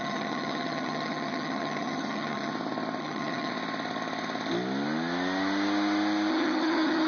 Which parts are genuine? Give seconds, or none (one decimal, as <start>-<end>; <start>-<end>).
2.5-3.0; 3.5-6.3